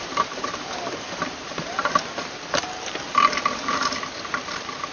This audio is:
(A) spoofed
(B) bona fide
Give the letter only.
A